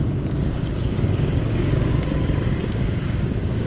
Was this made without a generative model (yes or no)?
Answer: no